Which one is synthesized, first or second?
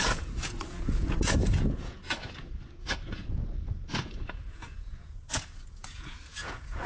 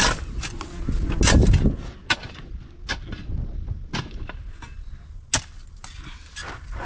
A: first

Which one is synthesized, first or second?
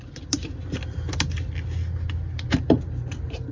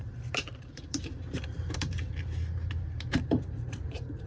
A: second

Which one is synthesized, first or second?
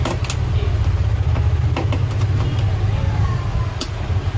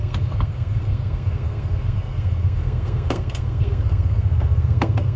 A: second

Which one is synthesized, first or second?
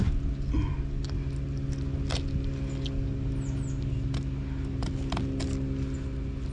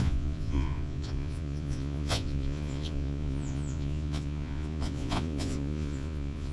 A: second